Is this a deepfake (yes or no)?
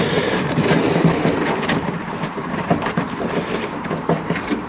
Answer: yes